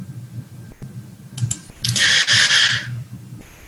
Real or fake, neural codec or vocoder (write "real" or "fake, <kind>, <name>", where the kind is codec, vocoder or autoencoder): real